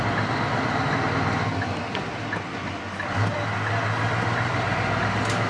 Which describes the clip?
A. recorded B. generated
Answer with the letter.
A